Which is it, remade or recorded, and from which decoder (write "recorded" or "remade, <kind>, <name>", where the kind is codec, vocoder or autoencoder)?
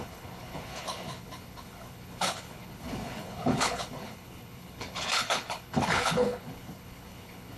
remade, codec, HILCodec